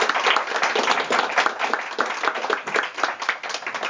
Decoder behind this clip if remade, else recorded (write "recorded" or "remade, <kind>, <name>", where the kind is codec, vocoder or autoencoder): recorded